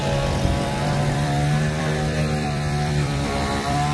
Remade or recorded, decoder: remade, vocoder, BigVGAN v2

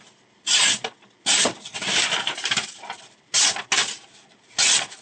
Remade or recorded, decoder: recorded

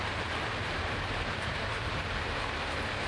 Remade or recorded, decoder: remade, vocoder, BigVGAN v2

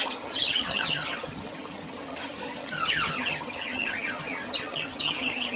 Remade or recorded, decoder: remade, vocoder, HiFi-GAN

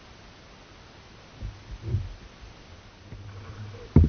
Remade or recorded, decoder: recorded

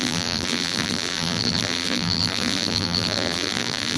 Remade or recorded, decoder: remade, vocoder, BigVGAN v2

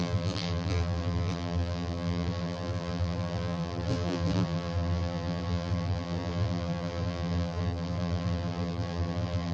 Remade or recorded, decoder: remade, vocoder, BigVGAN v2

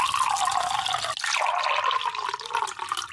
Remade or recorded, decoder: recorded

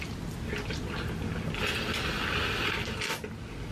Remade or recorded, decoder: recorded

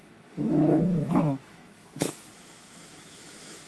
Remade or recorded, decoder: remade, autoencoder, DAC-VAE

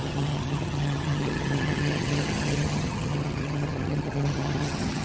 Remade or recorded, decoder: remade, vocoder, HiFi-GAN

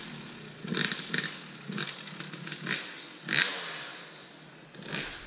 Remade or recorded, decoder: recorded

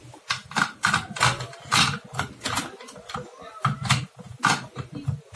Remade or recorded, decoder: recorded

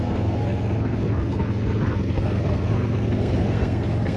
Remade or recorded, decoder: remade, codec, SNAC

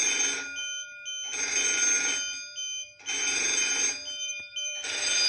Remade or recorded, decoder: recorded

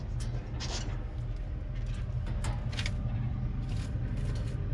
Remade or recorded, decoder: recorded